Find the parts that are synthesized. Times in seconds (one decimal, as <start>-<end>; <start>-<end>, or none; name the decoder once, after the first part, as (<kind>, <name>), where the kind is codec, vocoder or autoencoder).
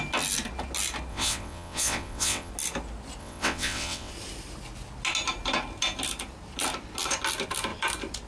1.1-2.5 (vocoder, WaveNeXt); 3.2-4.1